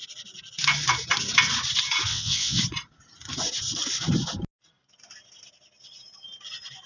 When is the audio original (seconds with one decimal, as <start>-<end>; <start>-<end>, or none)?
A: 0.0-2.1; 2.6-6.9